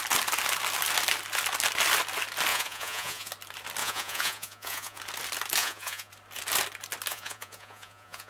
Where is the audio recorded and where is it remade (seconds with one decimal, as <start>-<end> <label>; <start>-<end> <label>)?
0.0-2.5 recorded; 2.5-3.3 remade; 3.3-3.8 recorded; 3.8-5.0 remade; 5.0-5.6 recorded; 5.6-6.1 remade; 6.1-7.1 recorded; 7.1-8.3 remade

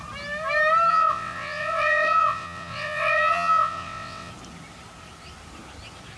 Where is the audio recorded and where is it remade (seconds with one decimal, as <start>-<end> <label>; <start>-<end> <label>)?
0.0-0.9 recorded; 0.9-4.3 remade; 4.3-6.2 recorded

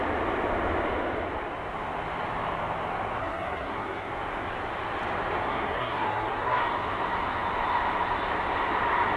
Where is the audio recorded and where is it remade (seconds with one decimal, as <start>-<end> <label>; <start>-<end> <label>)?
0.0-3.2 recorded; 3.2-4.1 remade; 4.1-5.5 recorded; 5.5-6.6 remade; 6.6-9.2 recorded